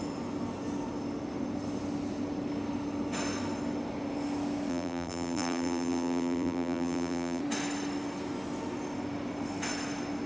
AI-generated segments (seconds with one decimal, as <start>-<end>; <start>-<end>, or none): 4.7-7.4